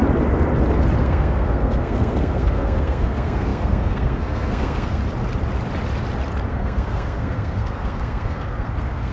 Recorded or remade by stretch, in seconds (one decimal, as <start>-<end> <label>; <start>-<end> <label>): 0.0-1.0 recorded; 1.0-5.0 remade; 5.0-6.5 recorded; 6.5-9.1 remade